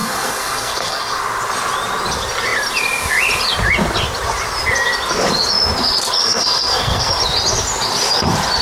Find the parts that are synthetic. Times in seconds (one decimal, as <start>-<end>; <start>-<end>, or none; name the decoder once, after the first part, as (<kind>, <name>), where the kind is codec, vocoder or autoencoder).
0.0-1.2 (codec, SNAC); 6.2-7.1